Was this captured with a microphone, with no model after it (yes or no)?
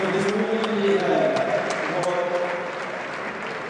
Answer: yes